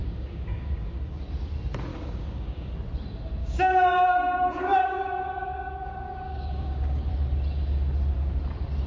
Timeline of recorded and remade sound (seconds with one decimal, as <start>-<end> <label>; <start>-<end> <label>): 0.0-1.2 remade; 1.2-1.9 recorded; 1.9-2.7 remade; 2.7-3.4 recorded; 3.4-7.1 remade; 7.1-8.9 recorded